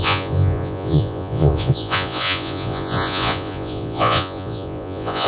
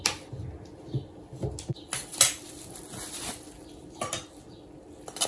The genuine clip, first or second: second